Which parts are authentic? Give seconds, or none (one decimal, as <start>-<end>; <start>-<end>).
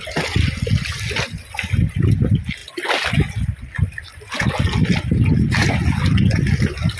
0.0-7.0